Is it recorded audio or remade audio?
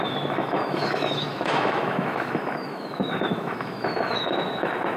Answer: remade